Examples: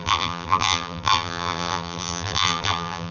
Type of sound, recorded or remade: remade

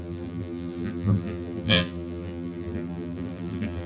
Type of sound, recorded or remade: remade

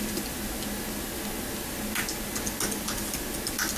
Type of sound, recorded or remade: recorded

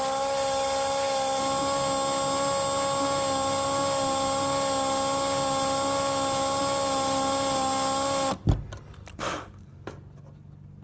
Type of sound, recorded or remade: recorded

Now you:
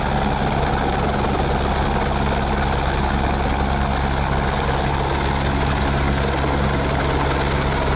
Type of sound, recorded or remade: recorded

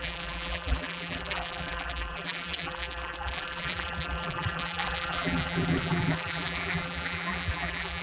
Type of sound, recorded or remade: remade